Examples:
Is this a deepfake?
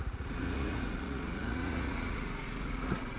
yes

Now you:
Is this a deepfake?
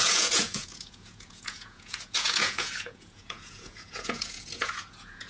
yes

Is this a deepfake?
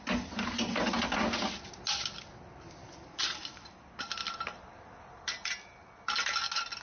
no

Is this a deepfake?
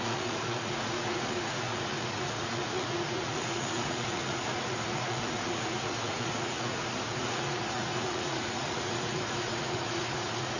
yes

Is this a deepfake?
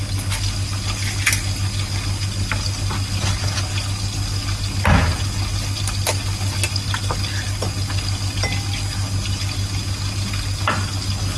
no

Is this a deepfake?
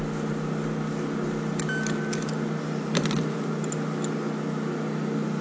no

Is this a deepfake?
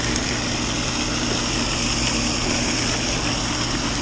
no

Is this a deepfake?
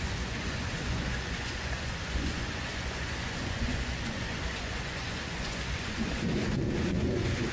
yes